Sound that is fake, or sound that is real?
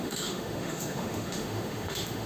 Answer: fake